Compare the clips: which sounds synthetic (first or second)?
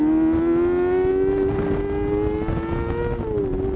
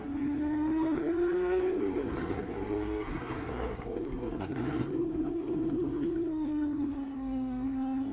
second